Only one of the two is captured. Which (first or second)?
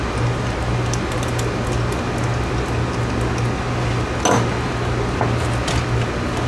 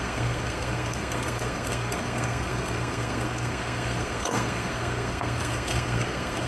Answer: first